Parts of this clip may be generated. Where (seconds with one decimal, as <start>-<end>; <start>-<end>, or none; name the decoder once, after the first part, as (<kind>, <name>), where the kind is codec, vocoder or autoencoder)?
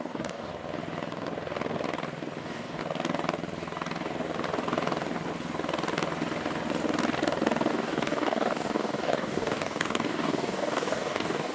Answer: 0.0-0.5 (codec, DAC); 2.4-2.8; 7.7-11.5